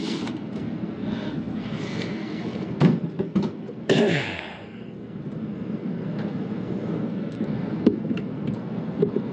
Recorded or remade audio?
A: remade